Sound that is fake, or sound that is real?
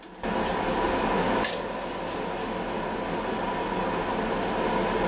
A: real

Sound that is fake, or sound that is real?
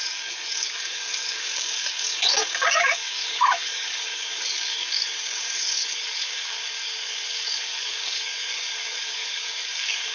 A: fake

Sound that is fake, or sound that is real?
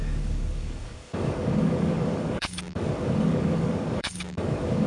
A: fake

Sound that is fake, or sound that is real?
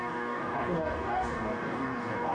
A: fake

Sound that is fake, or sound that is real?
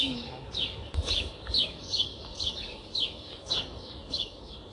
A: fake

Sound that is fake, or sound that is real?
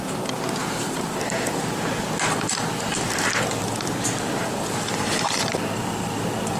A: real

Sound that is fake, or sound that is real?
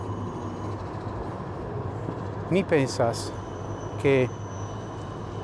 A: real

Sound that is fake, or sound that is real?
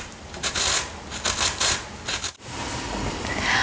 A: real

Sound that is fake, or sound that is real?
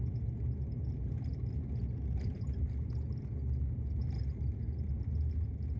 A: real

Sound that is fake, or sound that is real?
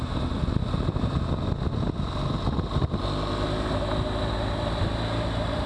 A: real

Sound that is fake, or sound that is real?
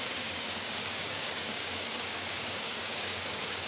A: fake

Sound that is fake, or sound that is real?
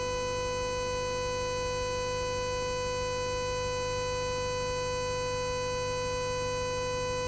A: real